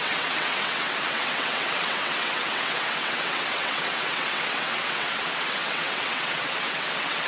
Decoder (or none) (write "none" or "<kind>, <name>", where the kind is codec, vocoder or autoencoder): vocoder, WaveNeXt